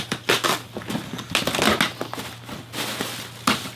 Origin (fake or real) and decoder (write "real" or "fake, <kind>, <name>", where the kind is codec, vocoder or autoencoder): real